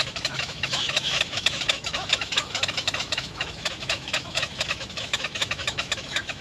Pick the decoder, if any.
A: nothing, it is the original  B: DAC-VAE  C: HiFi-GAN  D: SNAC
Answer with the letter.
B